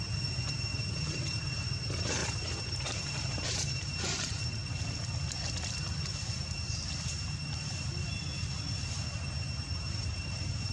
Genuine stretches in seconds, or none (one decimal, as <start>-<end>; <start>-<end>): 4.6-9.2